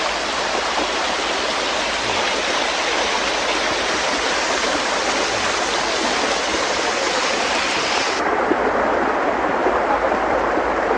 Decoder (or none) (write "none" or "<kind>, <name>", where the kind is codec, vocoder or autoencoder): none